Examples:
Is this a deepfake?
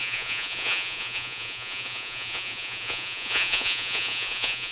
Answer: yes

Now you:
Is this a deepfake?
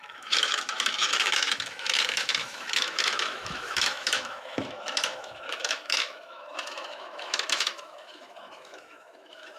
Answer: yes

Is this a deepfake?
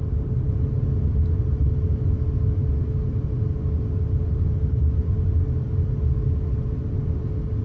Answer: no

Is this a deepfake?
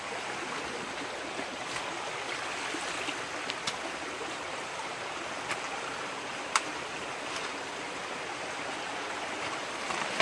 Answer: no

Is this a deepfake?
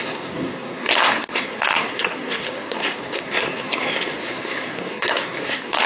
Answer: yes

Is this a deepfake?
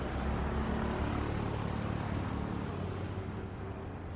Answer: no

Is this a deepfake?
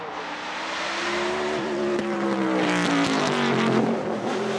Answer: no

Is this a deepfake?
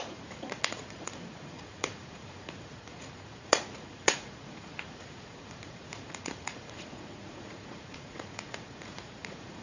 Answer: yes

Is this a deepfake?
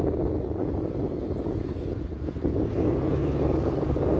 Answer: no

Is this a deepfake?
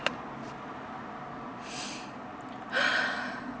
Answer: no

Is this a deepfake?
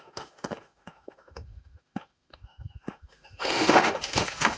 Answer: yes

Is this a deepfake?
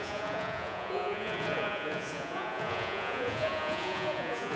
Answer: yes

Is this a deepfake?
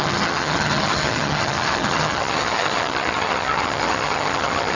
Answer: yes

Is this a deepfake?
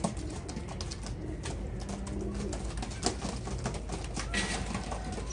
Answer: no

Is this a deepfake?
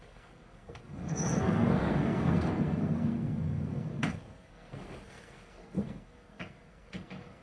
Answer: yes